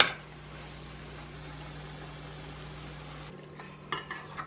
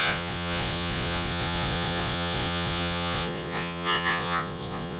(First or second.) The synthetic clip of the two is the second